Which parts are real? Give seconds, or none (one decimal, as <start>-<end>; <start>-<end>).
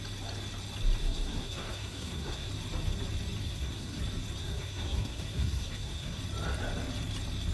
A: 0.0-1.0; 2.5-3.4; 4.0-4.4; 6.2-7.5